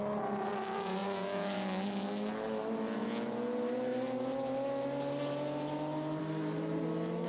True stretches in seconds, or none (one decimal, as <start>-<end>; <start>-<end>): 0.0-7.3